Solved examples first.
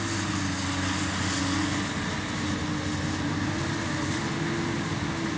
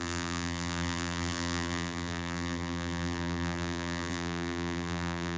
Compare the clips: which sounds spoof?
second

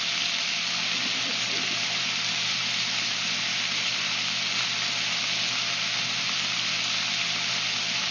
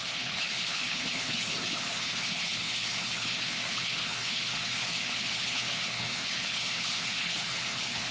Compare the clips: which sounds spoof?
second